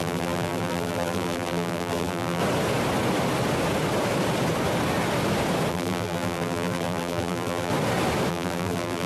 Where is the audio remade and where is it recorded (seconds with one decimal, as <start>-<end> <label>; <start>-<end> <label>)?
0.0-2.4 remade; 2.4-5.7 recorded; 5.7-7.7 remade; 7.7-8.3 recorded; 8.3-9.1 remade